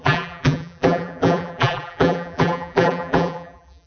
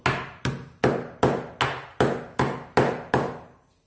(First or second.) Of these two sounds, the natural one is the second